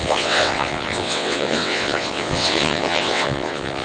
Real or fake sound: fake